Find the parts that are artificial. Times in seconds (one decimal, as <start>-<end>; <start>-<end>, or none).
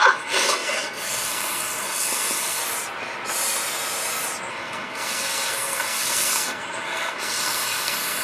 0.0-2.6; 4.5-8.2